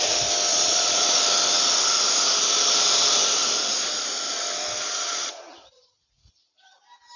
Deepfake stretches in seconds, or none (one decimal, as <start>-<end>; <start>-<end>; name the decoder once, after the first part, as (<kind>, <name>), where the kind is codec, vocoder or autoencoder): 0.5-1.2 (vocoder, Vocos); 4.9-6.3